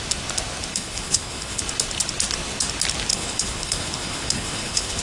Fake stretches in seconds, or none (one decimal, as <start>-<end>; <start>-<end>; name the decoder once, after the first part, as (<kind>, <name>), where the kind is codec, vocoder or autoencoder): 0.7-1.6 (codec, HILCodec); 3.1-5.0